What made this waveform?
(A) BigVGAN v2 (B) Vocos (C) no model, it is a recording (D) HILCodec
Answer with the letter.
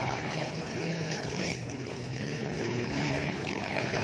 D